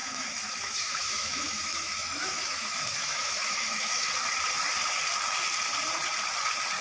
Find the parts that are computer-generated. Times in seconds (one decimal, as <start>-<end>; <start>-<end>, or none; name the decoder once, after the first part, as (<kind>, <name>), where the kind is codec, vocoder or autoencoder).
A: 0.0-4.1 (autoencoder, DAC-VAE)